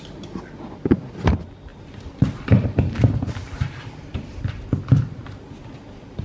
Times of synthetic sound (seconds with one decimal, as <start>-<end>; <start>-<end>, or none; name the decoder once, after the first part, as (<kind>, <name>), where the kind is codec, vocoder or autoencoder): 1.7-3.3 (vocoder, BigVGAN v2)